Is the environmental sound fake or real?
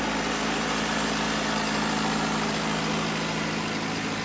real